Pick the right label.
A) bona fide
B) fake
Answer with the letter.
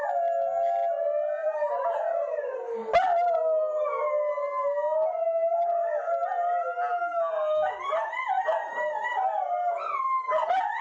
A